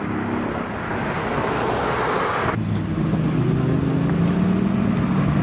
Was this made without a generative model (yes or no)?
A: yes